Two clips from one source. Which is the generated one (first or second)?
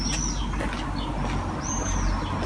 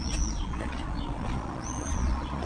second